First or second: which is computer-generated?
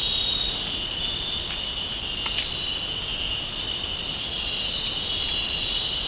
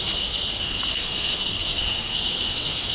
second